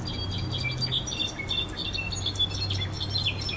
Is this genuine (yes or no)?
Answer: yes